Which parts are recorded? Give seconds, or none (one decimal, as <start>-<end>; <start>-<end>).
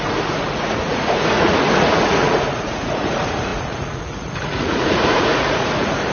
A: none